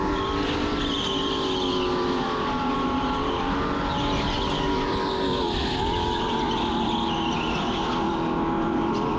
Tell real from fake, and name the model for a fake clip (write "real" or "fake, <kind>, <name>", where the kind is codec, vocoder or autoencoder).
real